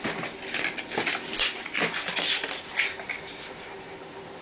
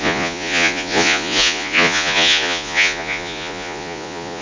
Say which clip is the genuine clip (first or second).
first